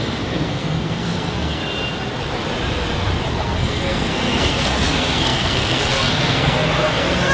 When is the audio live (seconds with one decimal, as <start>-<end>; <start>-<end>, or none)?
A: 1.6-3.3